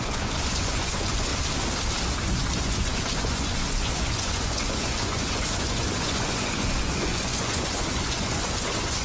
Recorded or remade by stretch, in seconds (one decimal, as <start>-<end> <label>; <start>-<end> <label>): 0.0-1.3 remade; 1.3-2.2 recorded; 2.2-9.0 remade